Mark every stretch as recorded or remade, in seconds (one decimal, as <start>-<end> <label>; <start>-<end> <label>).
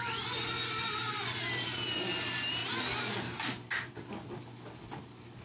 0.0-5.4 recorded